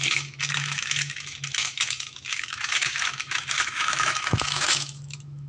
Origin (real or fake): fake